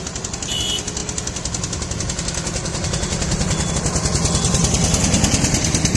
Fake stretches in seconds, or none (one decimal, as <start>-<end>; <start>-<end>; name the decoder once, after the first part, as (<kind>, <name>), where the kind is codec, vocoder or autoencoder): none